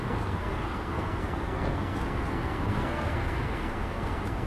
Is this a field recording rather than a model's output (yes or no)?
no